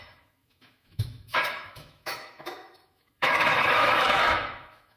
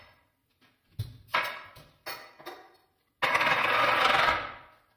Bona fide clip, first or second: second